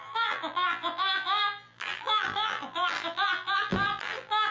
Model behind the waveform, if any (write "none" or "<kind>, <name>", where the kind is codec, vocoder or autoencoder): vocoder, BigVGAN v2